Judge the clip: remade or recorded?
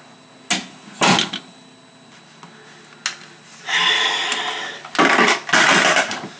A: recorded